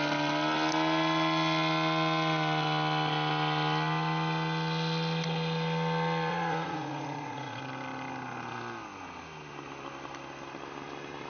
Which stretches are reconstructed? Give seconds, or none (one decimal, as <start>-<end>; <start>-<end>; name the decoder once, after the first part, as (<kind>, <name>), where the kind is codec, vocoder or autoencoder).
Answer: 6.3-7.6 (vocoder, Vocos)